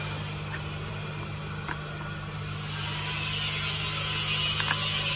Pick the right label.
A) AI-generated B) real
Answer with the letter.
B